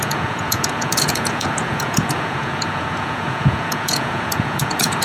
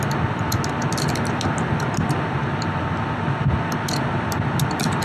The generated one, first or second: first